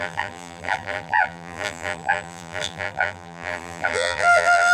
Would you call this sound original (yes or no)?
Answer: no